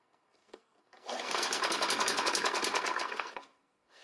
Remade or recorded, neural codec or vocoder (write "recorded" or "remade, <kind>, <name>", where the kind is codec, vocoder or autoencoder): remade, codec, SNAC